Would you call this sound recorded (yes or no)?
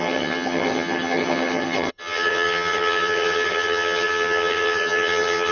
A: no